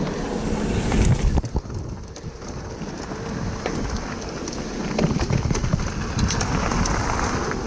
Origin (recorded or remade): recorded